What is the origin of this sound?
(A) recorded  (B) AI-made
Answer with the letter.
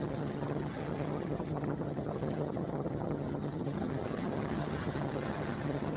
B